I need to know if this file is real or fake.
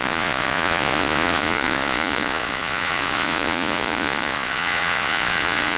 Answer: fake